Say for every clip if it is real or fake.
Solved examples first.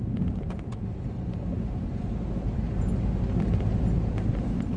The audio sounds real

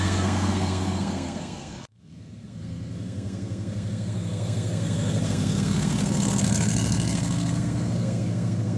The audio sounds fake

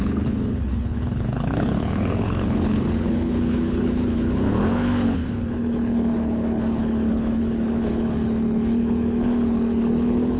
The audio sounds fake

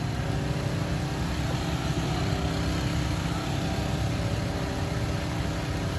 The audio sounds real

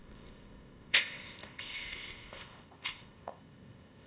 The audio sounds fake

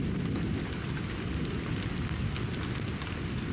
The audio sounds real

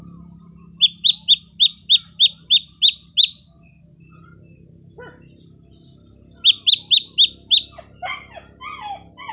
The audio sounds real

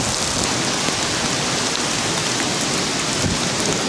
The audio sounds real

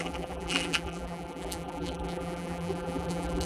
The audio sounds fake